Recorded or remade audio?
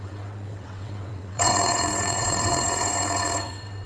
remade